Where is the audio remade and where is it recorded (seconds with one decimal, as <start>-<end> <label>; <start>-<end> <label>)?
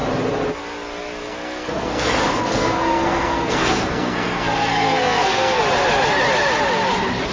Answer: 0.0-1.2 recorded; 1.2-5.6 remade; 5.6-7.3 recorded